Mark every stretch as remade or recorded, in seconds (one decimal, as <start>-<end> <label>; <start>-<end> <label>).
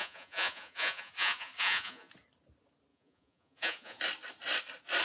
0.0-2.1 remade; 2.1-2.9 recorded; 2.9-4.0 remade; 4.0-5.0 recorded